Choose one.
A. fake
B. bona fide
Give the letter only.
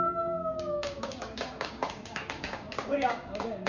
A